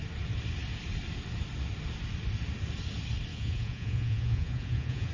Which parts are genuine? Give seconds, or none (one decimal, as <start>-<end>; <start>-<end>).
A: 0.0-3.3